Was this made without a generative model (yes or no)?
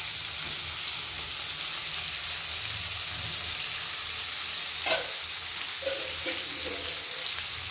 yes